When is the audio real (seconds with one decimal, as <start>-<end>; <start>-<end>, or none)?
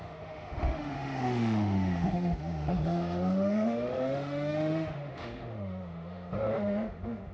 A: none